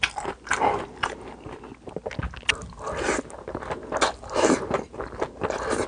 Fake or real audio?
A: real